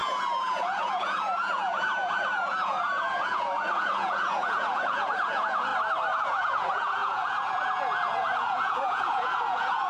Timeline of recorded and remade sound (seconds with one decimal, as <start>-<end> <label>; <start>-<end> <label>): 0.0-5.7 remade; 5.7-6.2 recorded; 6.2-9.9 remade